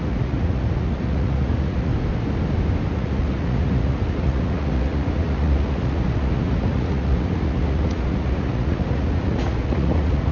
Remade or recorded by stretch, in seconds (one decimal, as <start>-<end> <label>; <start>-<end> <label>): 0.0-1.9 remade; 1.9-2.9 recorded; 2.9-10.3 remade